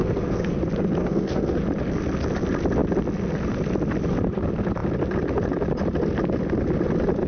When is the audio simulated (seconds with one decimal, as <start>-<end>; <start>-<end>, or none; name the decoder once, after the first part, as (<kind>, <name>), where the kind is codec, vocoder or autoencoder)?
0.0-0.5 (codec, SNAC); 1.0-1.6

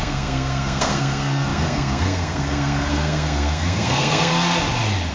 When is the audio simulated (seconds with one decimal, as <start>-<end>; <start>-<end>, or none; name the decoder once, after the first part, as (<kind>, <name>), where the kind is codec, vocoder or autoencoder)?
0.0-4.3 (codec, SNAC)

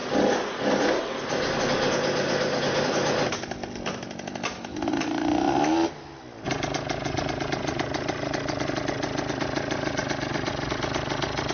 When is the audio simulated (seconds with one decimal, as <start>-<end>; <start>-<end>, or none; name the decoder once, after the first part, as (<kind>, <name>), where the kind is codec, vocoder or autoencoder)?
none

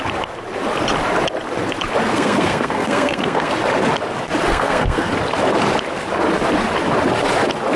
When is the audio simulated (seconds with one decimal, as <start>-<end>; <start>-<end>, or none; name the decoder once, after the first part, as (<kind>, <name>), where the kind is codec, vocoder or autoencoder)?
2.1-3.5 (codec, SNAC); 4.5-5.1

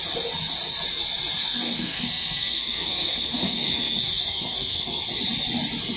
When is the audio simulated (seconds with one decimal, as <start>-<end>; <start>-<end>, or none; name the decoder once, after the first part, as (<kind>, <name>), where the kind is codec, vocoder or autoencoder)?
1.4-5.0 (codec, SNAC)